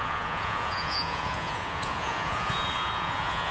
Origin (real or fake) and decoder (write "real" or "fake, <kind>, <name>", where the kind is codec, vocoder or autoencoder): fake, vocoder, Vocos